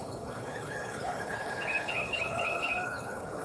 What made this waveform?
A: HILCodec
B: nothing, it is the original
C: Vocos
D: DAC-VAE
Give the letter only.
A